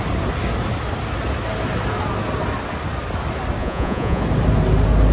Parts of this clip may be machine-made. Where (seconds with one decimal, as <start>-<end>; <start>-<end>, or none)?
3.6-4.2